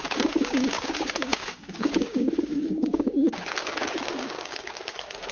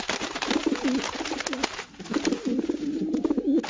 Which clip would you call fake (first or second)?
first